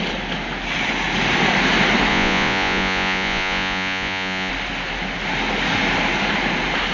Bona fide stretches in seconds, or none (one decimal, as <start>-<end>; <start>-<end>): 0.0-2.1; 4.5-6.9